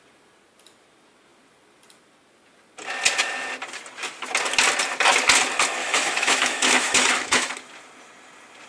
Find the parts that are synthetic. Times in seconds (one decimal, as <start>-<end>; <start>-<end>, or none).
5.8-7.5

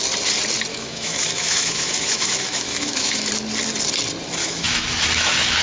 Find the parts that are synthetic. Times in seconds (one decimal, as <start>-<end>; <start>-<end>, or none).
0.7-3.3; 4.4-5.6

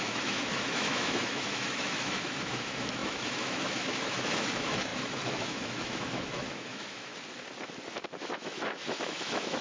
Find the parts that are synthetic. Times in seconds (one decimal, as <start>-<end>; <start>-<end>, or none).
0.0-7.1; 8.3-9.6